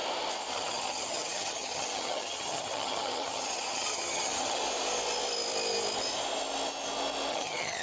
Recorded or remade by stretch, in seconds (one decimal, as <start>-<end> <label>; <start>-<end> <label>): 0.0-0.5 recorded; 0.5-4.6 remade; 4.6-7.3 recorded; 7.3-7.8 remade